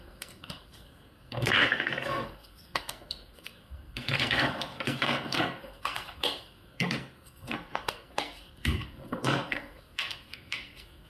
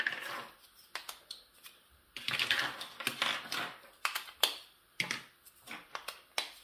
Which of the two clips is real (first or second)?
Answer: second